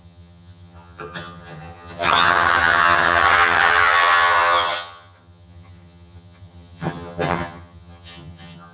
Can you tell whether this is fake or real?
fake